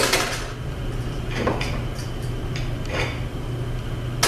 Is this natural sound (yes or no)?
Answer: yes